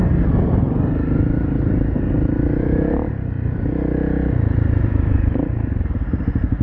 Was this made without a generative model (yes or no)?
yes